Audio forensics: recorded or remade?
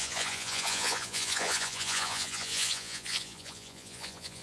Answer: remade